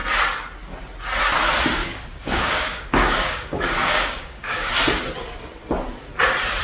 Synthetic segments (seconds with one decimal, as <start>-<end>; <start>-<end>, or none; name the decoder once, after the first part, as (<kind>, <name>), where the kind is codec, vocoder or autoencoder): 1.8-4.7 (codec, DAC)